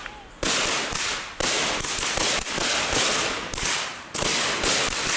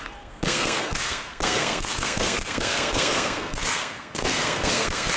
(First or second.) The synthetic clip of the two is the second